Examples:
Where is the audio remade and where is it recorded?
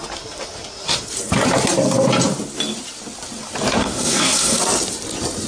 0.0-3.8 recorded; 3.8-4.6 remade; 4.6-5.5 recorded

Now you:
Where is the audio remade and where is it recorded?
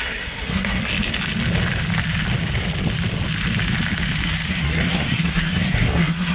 0.0-0.9 remade; 0.9-4.5 recorded; 4.5-6.3 remade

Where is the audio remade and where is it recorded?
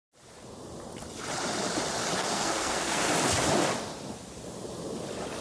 0.0-2.2 recorded; 2.2-3.1 remade; 3.1-5.4 recorded